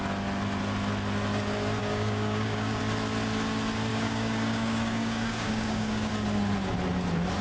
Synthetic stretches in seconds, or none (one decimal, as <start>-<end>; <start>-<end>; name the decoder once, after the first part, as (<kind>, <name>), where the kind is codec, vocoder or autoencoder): 1.8-2.8 (codec, DAC); 3.9-6.1

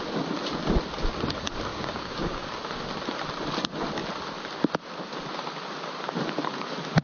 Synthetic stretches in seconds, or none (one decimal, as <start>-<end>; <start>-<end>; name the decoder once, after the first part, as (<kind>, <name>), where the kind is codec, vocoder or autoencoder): 1.7-2.5 (codec, DAC)

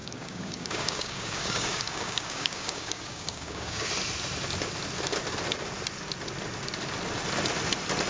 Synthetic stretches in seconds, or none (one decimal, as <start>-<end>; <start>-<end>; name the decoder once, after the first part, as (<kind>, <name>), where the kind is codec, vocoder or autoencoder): 0.0-3.9 (codec, DAC)